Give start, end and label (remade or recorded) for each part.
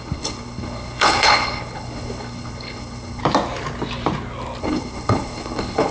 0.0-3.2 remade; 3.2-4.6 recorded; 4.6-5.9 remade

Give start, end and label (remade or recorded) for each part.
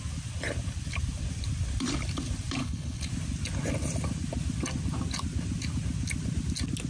0.0-2.6 recorded; 2.6-3.1 remade; 3.1-6.9 recorded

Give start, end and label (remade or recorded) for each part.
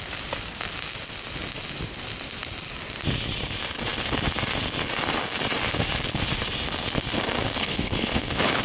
0.0-7.6 recorded; 7.6-8.6 remade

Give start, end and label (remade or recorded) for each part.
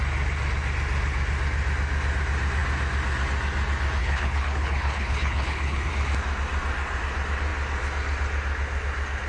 0.0-4.0 recorded; 4.0-5.9 remade; 5.9-9.3 recorded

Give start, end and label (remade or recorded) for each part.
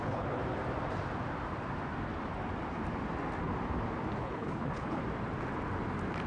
0.0-0.4 remade; 0.4-4.2 recorded; 4.2-5.0 remade; 5.0-6.3 recorded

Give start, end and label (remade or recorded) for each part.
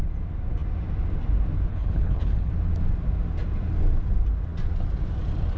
0.0-1.7 recorded; 1.7-2.5 remade; 2.5-5.6 recorded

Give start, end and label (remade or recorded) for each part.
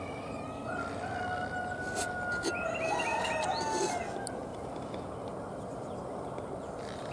0.0-7.1 recorded